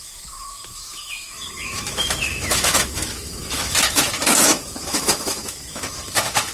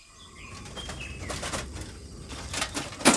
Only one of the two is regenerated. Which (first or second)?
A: first